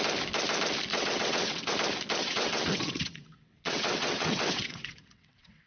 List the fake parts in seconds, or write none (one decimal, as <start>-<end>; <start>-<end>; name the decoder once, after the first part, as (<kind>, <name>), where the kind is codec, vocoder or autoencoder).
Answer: 0.9-1.7 (vocoder, WaveNeXt); 2.2-5.7